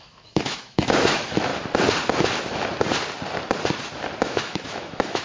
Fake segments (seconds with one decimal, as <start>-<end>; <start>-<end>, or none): 0.0-1.5; 4.2-5.2